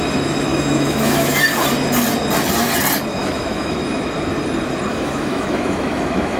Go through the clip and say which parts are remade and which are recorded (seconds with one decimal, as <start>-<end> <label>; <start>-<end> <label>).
0.0-0.5 recorded; 0.5-1.4 remade; 1.4-3.2 recorded; 3.2-4.0 remade; 4.0-4.9 recorded; 4.9-6.4 remade